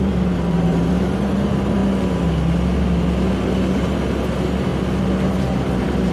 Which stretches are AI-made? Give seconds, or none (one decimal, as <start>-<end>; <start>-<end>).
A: 0.0-1.8; 3.7-4.7; 5.3-6.1